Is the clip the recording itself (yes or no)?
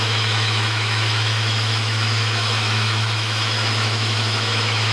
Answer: no